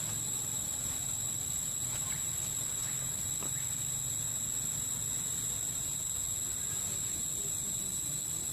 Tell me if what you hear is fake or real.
real